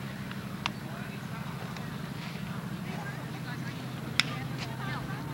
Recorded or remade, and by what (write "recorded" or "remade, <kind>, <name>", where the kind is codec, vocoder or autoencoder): recorded